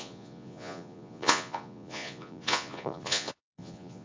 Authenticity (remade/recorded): remade